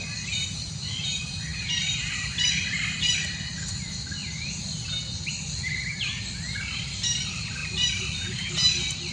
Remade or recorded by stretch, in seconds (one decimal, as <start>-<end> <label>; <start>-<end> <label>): 0.0-1.5 remade; 1.5-2.0 recorded; 2.0-4.2 remade; 4.2-5.2 recorded; 5.2-9.1 remade